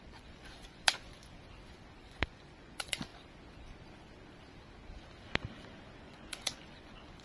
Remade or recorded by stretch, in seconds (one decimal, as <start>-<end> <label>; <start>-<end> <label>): 0.0-1.3 remade; 1.3-2.0 recorded; 2.0-3.1 remade; 3.1-6.0 recorded; 6.0-7.2 remade